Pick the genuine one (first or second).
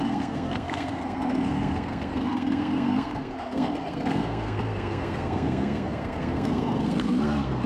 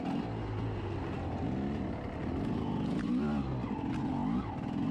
second